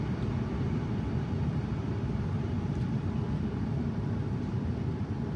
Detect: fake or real fake